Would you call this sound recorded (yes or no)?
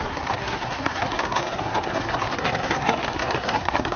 no